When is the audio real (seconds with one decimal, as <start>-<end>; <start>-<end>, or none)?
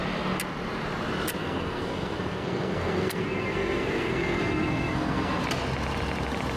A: 0.0-1.4; 5.4-6.6